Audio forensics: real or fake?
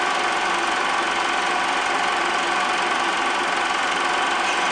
real